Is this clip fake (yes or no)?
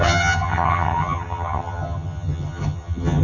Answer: yes